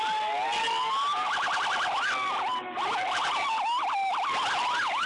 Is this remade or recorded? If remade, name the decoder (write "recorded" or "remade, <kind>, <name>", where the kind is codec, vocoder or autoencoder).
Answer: recorded